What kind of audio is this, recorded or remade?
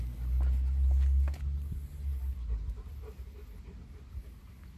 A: recorded